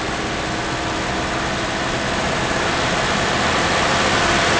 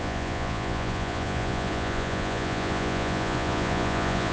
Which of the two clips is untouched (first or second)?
first